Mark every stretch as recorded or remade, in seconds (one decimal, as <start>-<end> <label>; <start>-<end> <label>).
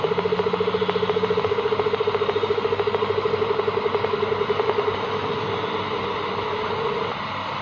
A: 0.0-7.6 recorded